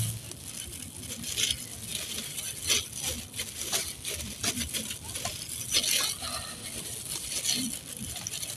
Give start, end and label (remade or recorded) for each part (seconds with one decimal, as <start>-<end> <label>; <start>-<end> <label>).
0.0-8.6 recorded